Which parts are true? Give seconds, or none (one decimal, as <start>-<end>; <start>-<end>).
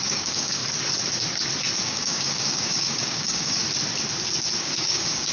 0.6-1.8; 3.6-4.6